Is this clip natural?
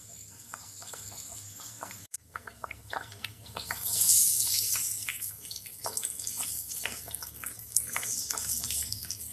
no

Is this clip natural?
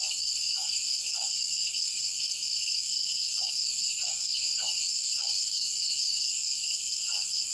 no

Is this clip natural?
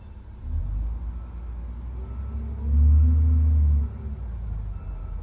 yes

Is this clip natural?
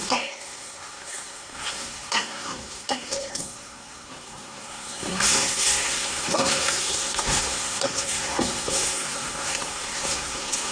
no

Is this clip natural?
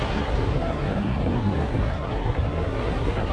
no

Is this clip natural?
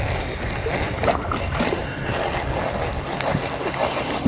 yes